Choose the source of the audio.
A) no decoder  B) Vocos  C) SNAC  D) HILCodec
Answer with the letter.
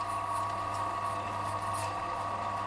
A